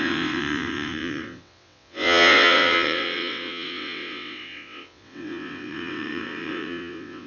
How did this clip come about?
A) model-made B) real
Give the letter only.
A